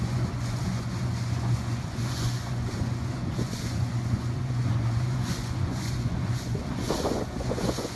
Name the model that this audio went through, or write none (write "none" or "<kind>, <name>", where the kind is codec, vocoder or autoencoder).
vocoder, Vocos